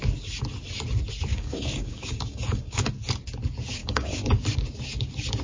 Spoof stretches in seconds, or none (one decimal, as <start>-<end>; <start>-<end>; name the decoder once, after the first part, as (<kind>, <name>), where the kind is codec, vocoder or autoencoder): 1.3-2.9 (codec, DAC); 3.8-4.4